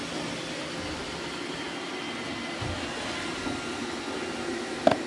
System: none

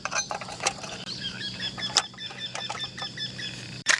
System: vocoder, BigVGAN v2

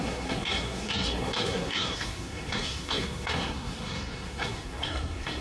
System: codec, SNAC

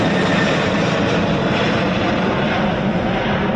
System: vocoder, BigVGAN v2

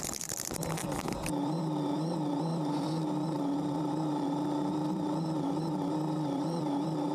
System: vocoder, BigVGAN v2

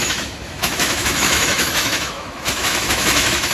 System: autoencoder, DAC-VAE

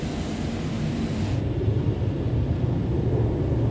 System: none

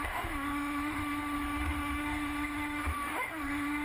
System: autoencoder, DAC-VAE